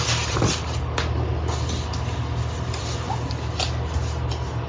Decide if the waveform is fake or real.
real